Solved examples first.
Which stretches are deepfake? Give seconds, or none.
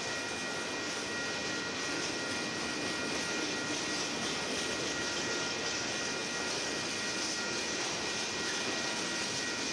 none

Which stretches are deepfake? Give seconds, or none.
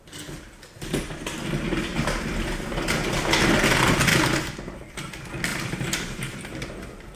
4.1-5.1 (vocoder, BigVGAN v2); 5.5-6.7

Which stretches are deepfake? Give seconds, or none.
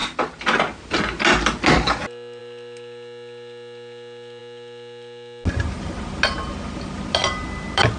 none